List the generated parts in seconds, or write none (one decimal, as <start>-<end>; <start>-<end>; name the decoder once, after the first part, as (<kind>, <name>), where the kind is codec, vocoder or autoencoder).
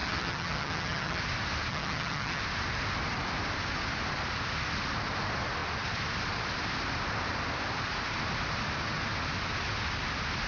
0.0-1.2 (vocoder, HiFi-GAN); 1.7-2.4